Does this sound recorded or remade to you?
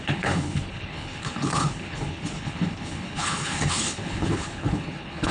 remade